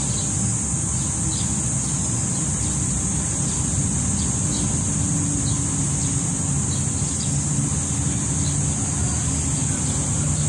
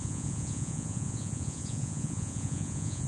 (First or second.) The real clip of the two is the first